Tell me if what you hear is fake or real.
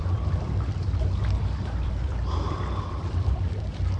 fake